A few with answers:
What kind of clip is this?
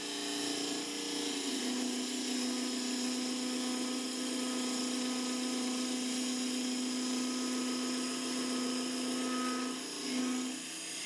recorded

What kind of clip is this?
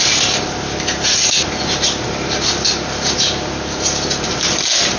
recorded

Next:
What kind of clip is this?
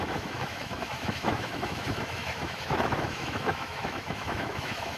remade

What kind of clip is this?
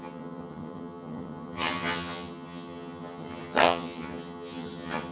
remade